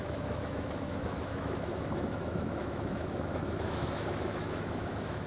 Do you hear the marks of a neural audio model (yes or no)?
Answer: yes